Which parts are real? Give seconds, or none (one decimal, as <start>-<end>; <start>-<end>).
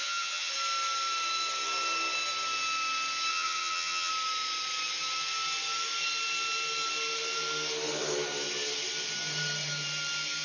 0.5-3.3; 4.1-10.4